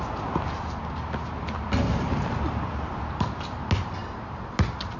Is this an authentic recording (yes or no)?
yes